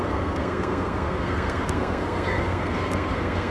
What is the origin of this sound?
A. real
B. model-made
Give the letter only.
B